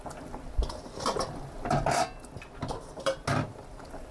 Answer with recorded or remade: recorded